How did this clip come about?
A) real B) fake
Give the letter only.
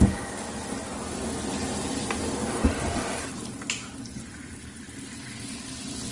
A